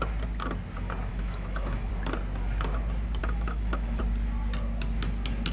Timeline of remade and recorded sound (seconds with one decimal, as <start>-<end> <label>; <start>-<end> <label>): 0.0-1.1 recorded; 1.1-1.9 remade; 1.9-3.2 recorded; 3.2-4.0 remade; 4.0-5.5 recorded